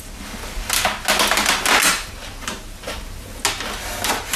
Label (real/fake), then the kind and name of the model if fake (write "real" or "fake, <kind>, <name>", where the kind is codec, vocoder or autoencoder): real